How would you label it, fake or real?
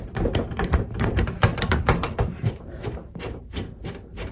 fake